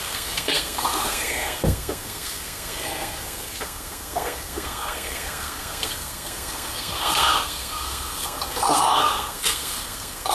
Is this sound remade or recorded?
remade